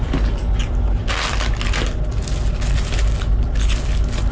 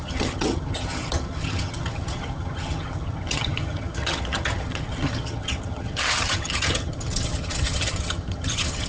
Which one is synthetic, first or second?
second